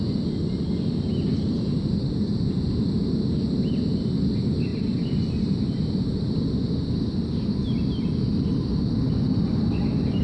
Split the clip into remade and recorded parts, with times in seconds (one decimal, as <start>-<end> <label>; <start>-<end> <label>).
0.0-4.7 recorded; 4.7-6.6 remade; 6.6-10.2 recorded